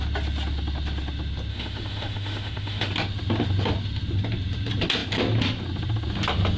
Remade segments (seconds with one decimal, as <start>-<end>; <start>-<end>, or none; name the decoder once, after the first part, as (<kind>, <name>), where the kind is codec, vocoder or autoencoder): 1.5-2.9 (autoencoder, DAC-VAE)

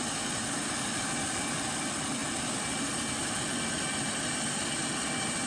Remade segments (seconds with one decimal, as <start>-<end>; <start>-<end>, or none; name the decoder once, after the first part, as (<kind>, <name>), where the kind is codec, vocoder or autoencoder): none

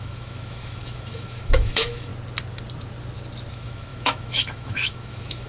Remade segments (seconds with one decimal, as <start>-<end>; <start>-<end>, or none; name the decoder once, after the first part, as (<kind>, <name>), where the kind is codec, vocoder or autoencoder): 0.0-2.1 (autoencoder, DAC-VAE); 3.5-5.5

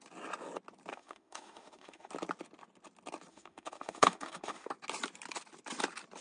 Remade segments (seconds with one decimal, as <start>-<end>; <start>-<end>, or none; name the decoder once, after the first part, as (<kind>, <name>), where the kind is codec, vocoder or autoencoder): 0.9-2.1 (autoencoder, DAC-VAE); 3.3-4.7

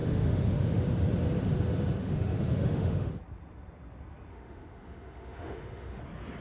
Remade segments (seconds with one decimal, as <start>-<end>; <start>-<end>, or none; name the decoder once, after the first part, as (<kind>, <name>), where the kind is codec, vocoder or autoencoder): 0.0-0.8 (autoencoder, DAC-VAE); 2.0-3.1; 4.3-6.0